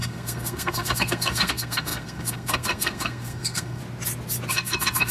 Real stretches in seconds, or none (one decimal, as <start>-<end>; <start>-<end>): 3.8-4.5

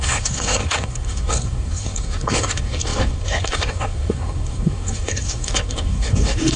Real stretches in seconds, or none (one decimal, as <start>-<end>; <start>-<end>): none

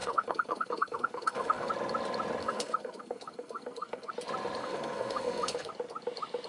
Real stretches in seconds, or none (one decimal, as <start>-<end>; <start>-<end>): 1.7-2.4; 4.1-4.6; 5.7-6.5